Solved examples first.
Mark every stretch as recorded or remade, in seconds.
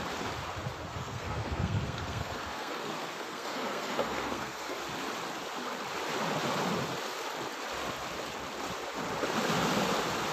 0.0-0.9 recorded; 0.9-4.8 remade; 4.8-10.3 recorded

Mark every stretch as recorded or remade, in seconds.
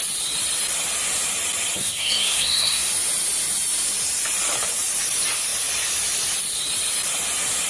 0.0-1.8 recorded; 1.8-2.9 remade; 2.9-7.7 recorded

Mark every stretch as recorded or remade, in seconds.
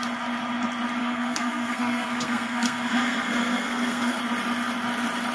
0.0-1.0 recorded; 1.0-4.2 remade; 4.2-5.3 recorded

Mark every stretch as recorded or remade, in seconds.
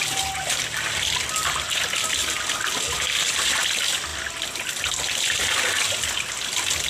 0.0-6.9 recorded